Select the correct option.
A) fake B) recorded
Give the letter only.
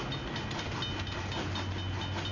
B